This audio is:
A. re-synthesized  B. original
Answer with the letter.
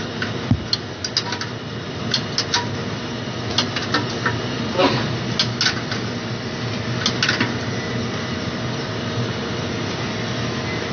B